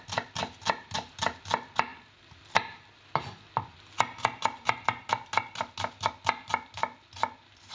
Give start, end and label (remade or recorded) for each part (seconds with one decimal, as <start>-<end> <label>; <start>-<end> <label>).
0.0-7.7 recorded